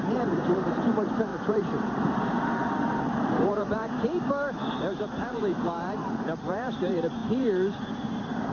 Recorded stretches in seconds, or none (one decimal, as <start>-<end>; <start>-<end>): none

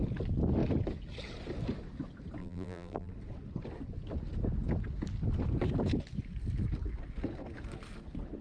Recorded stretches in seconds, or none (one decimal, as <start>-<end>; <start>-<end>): 0.0-2.4; 3.1-8.4

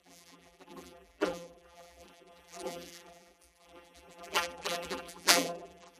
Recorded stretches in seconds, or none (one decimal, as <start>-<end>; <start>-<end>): none

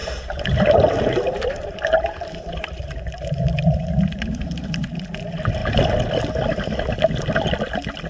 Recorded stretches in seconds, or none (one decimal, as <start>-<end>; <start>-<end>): 4.9-8.1

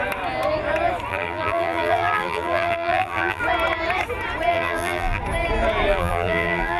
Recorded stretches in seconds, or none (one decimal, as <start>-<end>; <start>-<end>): 0.0-1.1; 3.4-4.5; 5.2-5.9

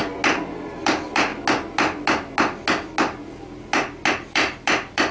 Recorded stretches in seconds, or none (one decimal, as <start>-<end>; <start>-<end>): 0.0-0.8; 1.3-4.1

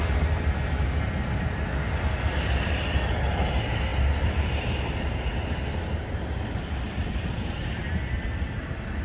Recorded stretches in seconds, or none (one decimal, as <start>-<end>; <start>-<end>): 0.0-3.9; 5.2-7.0; 7.7-9.0

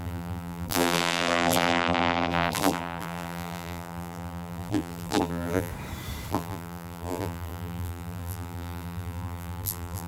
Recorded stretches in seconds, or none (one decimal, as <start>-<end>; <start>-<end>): 5.7-6.3